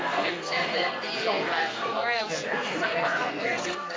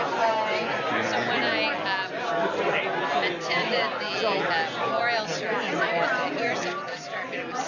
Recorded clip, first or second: second